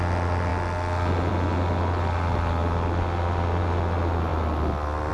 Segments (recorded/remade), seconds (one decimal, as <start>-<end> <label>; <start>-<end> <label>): 0.0-5.1 recorded